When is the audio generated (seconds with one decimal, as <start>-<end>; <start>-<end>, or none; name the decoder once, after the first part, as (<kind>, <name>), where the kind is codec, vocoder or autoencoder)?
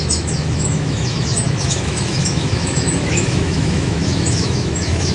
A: 0.0-5.1 (autoencoder, DAC-VAE)